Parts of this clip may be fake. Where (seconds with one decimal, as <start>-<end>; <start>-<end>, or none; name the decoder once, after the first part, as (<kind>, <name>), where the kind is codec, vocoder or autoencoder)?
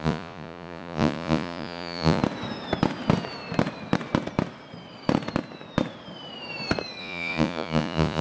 0.0-2.2 (vocoder, Vocos); 7.0-8.2